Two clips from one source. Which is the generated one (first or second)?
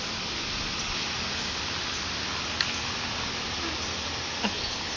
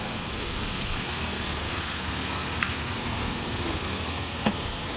second